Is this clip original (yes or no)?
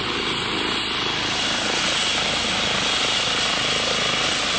yes